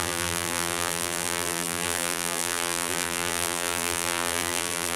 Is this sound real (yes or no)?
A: no